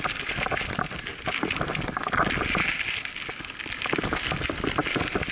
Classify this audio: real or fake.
real